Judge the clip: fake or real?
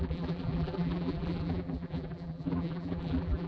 fake